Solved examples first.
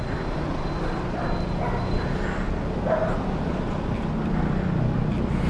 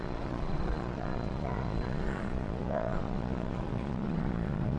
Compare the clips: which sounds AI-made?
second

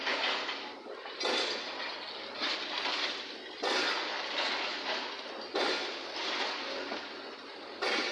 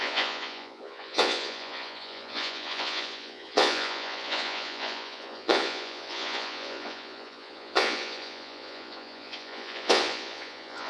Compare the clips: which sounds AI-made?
second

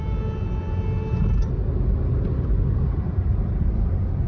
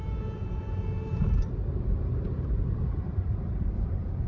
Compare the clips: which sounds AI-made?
second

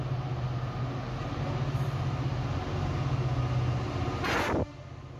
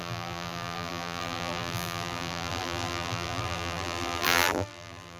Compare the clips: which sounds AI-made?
second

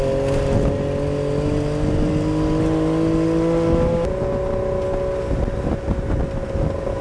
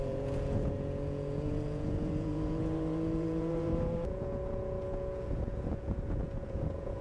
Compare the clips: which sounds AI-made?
second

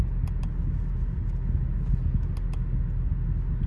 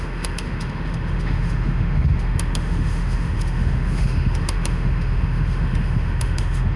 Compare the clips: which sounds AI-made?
second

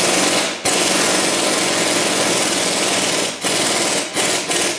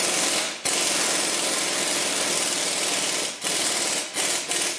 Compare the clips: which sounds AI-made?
first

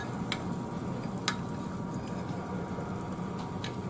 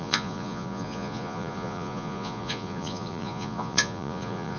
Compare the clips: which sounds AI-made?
second